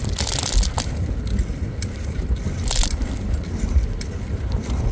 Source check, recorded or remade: recorded